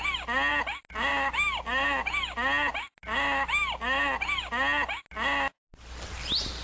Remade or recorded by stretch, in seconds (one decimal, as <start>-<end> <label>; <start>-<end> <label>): 0.0-6.6 recorded